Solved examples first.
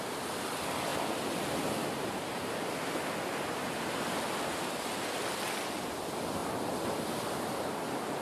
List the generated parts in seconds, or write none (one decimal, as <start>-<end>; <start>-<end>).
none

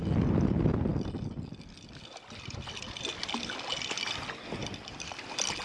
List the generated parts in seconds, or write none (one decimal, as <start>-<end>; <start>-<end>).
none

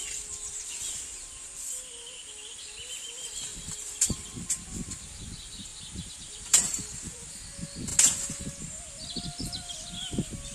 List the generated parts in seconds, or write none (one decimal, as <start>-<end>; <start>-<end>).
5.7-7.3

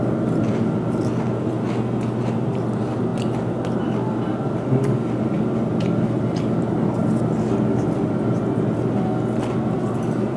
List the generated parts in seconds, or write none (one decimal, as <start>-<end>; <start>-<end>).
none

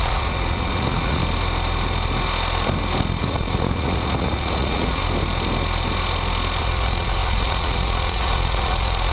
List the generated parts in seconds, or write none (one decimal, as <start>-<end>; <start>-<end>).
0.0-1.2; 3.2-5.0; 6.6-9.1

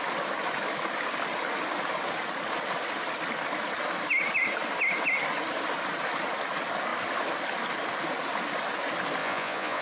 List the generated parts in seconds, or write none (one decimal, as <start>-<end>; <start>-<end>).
9.2-9.8

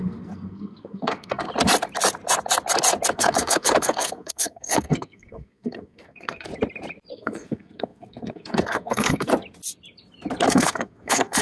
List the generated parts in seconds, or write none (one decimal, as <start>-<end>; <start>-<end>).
0.0-1.5; 3.1-6.5; 7.1-9.3; 10.5-11.4

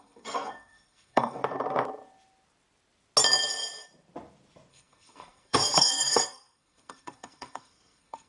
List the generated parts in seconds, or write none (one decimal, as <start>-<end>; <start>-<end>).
0.0-1.4; 4.7-8.3